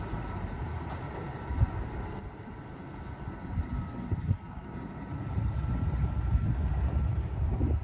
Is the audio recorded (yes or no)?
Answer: yes